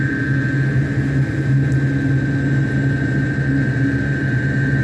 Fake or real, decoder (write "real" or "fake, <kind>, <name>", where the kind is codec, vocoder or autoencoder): real